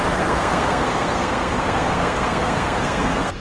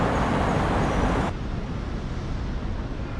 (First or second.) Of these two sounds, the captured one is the second